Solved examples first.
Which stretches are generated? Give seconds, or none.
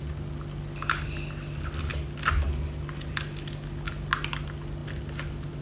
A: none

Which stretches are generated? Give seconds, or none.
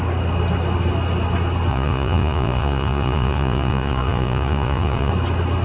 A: 1.7-5.1 (vocoder, Vocos)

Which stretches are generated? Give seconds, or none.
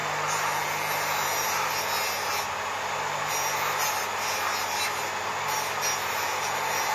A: none